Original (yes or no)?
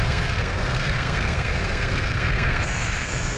no